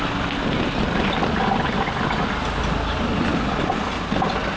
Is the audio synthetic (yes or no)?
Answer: no